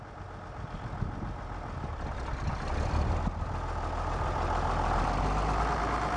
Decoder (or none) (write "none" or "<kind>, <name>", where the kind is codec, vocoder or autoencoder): none